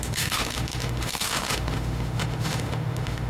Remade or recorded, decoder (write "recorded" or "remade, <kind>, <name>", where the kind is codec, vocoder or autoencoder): remade, autoencoder, DAC-VAE